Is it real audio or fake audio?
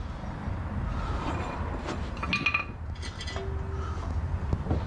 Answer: real